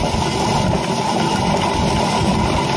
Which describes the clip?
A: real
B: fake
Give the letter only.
A